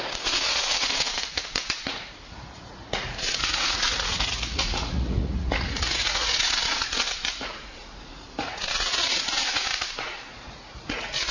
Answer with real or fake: fake